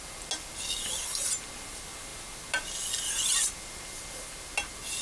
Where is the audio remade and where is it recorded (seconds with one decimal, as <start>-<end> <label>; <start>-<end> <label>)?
0.0-5.0 recorded